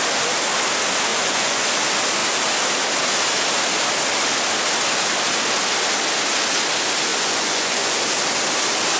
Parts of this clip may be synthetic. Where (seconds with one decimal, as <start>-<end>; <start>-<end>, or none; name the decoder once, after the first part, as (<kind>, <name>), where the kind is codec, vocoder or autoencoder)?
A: 1.1-1.7 (vocoder, Vocos); 7.1-8.0